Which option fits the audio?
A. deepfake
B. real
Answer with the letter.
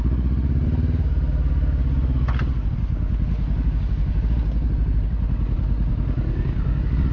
B